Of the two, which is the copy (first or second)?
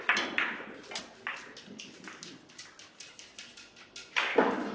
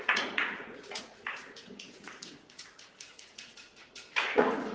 second